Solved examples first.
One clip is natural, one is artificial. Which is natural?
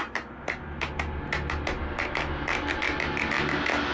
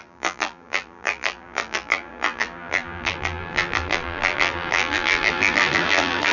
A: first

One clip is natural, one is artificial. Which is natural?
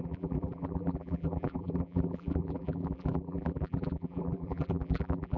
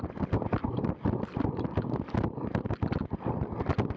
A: second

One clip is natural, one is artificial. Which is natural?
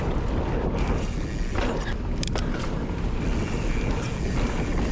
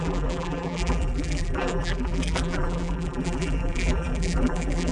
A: first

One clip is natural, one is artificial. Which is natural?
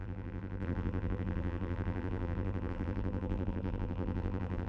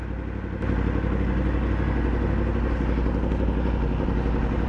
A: second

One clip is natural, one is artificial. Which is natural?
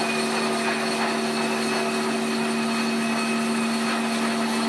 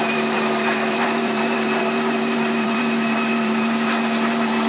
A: first